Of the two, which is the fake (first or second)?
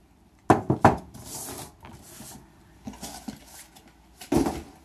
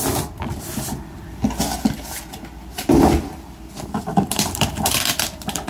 second